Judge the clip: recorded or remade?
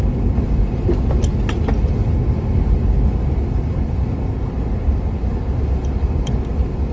recorded